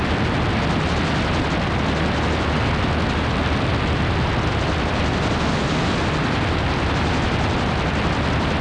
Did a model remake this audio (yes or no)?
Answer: no